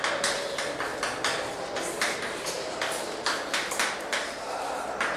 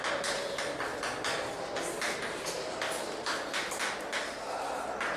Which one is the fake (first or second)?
first